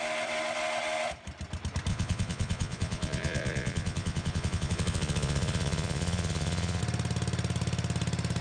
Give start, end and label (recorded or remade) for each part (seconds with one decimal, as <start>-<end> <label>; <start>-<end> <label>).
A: 0.0-1.9 recorded; 1.9-6.8 remade; 6.8-8.4 recorded